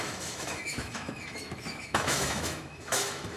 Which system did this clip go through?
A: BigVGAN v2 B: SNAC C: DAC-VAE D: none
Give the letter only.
C